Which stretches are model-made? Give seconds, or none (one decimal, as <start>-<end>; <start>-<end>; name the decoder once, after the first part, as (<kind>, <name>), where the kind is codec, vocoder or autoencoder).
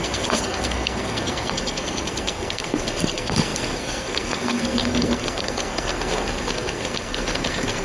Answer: 0.0-7.8 (codec, SNAC)